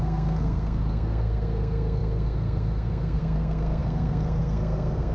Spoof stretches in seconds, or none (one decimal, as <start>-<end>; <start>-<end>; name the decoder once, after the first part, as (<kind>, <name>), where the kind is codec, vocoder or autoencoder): 0.0-5.1 (codec, SNAC)